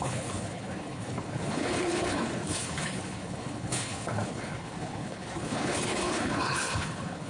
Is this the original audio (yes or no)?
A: no